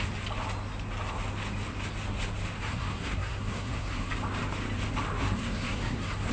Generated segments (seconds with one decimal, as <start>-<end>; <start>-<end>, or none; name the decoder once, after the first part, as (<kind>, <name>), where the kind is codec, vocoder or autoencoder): 2.6-4.1 (codec, SNAC); 5.2-6.3